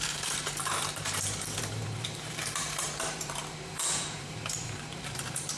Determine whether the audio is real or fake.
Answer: fake